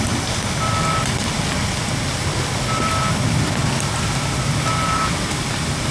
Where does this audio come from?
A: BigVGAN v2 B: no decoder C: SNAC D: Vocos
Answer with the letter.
B